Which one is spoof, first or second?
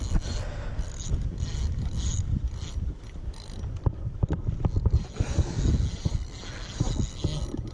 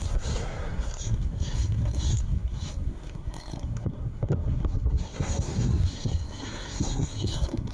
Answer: second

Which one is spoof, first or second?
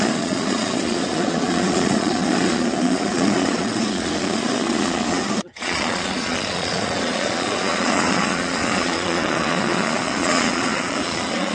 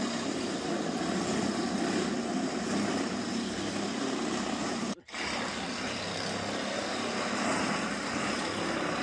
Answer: first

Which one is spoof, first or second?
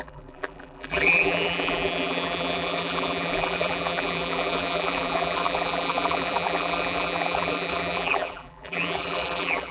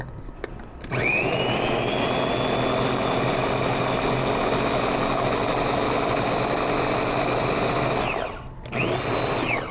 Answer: first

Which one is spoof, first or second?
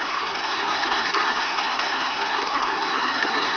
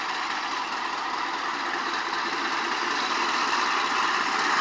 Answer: first